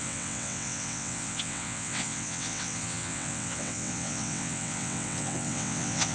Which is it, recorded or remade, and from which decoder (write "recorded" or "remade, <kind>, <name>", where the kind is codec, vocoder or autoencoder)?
remade, vocoder, WaveNeXt